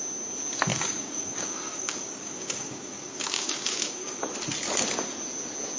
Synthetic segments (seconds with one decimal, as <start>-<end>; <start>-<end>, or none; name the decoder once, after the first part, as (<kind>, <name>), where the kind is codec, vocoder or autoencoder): 0.7-4.2 (codec, DAC)